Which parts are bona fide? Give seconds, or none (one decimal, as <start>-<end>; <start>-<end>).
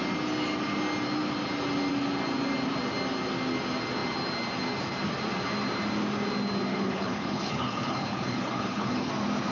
0.0-6.7; 9.1-9.5